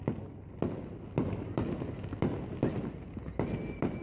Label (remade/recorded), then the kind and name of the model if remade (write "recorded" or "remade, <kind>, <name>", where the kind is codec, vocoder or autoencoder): recorded